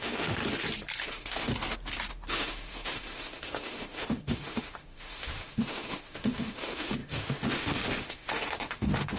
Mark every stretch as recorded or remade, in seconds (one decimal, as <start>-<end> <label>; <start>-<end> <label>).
0.0-0.4 remade; 0.4-1.0 recorded; 1.0-1.5 remade; 1.5-2.1 recorded; 2.1-9.2 remade